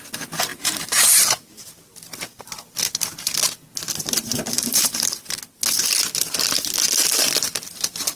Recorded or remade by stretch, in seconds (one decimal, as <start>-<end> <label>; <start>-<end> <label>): 0.0-0.5 recorded; 0.5-5.4 remade; 5.4-8.2 recorded